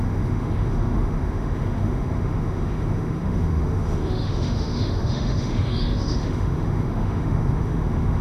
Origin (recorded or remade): remade